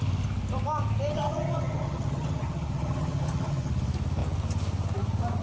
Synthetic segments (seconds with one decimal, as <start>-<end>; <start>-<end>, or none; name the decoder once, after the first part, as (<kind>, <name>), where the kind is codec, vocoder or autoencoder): 1.1-3.7 (vocoder, HiFi-GAN)